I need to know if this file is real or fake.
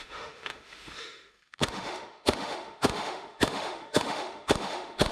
fake